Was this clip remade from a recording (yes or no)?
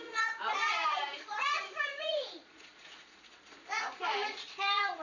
yes